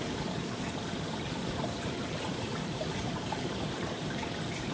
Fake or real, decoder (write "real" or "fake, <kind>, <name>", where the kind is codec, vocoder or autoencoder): fake, vocoder, BigVGAN v2